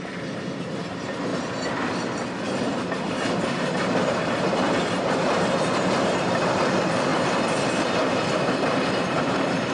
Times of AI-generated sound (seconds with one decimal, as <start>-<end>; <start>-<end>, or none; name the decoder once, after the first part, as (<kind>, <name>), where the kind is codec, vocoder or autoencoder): 0.0-1.3 (vocoder, BigVGAN v2); 3.0-9.7